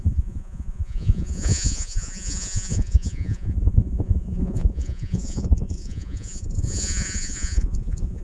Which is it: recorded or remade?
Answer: remade